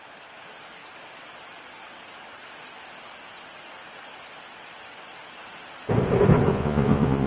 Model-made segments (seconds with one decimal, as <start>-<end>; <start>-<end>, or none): 6.5-7.3